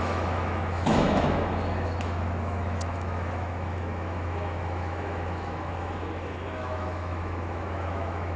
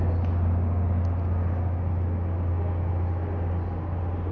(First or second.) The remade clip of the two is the first